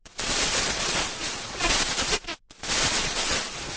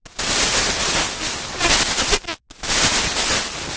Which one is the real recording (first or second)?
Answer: second